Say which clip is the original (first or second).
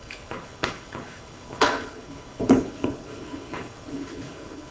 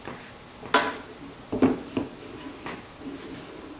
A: second